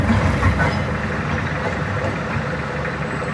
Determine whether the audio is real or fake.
real